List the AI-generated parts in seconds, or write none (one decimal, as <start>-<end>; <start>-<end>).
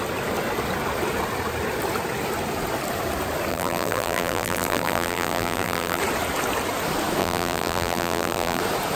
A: 3.5-6.0; 7.2-8.6